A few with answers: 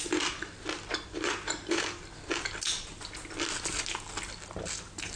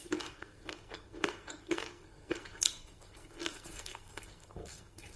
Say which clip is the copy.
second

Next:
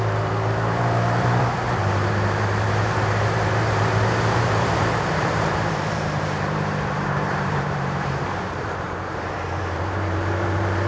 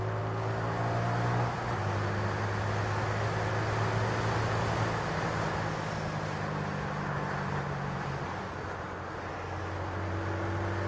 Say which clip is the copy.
first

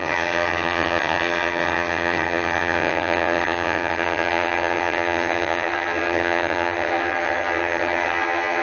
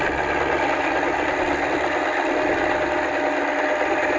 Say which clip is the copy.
first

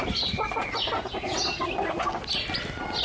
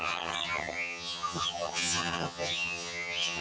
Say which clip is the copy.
second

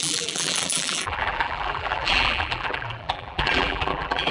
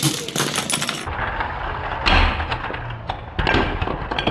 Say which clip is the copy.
first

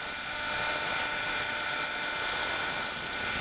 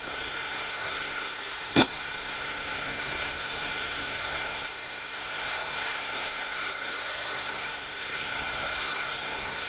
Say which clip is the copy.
second